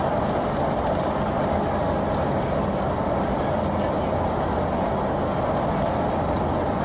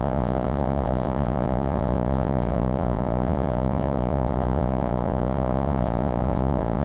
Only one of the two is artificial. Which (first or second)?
second